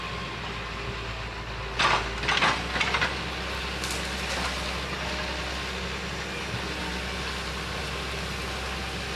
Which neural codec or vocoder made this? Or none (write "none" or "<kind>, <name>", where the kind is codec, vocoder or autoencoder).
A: none